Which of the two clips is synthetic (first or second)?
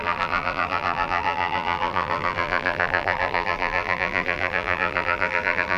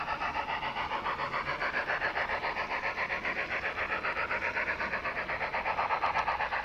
first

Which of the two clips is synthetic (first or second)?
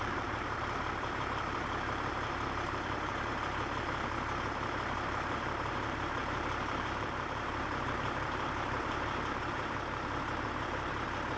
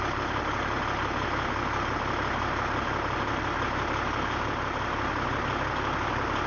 first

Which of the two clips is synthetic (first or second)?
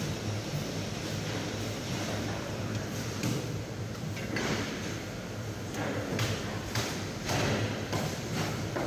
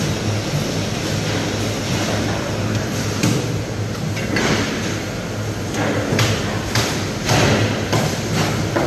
first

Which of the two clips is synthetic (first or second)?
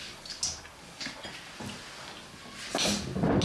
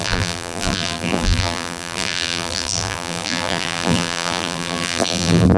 second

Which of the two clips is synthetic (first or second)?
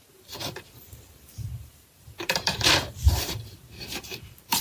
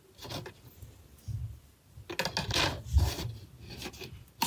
first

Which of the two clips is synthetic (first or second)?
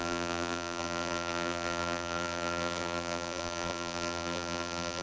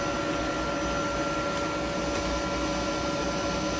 first